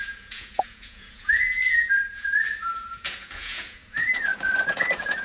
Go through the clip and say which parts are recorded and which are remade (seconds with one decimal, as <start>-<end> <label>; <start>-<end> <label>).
0.0-5.2 remade